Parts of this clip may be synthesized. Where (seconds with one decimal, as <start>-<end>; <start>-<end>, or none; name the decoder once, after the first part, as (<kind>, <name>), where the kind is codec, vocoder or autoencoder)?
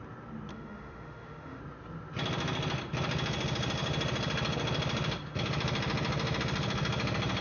0.5-1.6 (autoencoder, DAC-VAE)